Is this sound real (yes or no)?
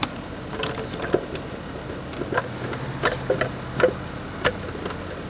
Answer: yes